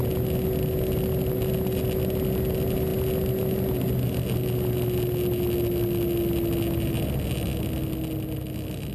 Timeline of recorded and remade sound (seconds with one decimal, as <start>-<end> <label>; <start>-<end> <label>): 0.0-8.9 recorded